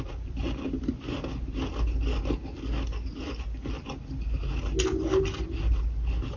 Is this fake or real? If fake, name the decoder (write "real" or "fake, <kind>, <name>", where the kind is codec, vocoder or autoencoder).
real